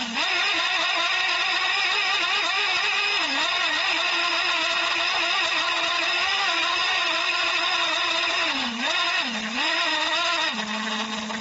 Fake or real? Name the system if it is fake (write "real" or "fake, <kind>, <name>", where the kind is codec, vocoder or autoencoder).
real